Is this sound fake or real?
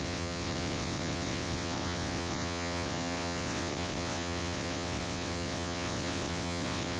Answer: fake